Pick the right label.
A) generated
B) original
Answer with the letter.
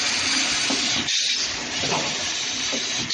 B